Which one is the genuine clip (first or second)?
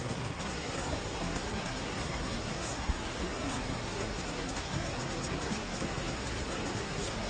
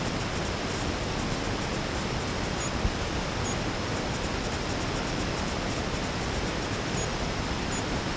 second